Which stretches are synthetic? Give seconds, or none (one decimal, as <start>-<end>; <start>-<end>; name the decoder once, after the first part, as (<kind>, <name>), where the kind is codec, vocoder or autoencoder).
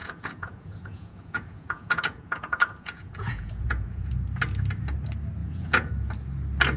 0.0-4.1 (vocoder, Vocos); 5.4-5.9